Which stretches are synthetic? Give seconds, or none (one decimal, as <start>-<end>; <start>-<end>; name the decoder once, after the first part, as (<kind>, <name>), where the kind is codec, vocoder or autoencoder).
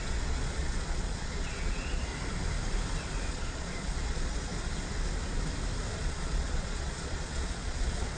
0.0-2.1 (vocoder, Vocos); 3.3-4.5; 6.0-8.2